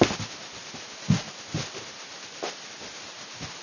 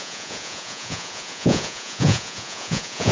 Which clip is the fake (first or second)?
second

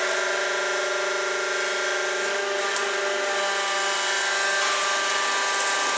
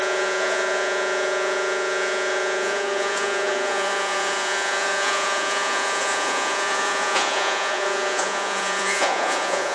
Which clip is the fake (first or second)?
second